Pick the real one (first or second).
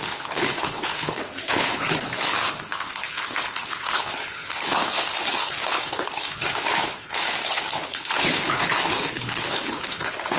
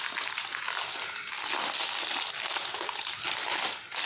second